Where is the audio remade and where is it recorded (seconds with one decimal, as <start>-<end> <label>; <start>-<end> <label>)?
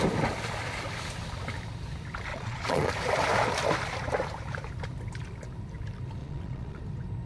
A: 0.0-2.3 recorded; 2.3-2.9 remade; 2.9-6.2 recorded; 6.2-6.8 remade; 6.8-7.3 recorded